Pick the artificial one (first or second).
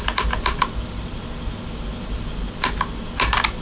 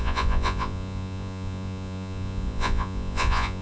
second